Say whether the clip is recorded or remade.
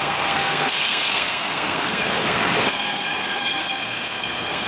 remade